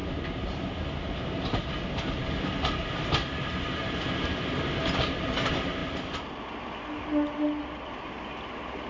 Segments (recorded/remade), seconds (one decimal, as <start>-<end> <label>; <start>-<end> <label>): 0.0-8.9 recorded